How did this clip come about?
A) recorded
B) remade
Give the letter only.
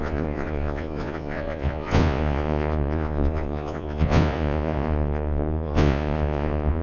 B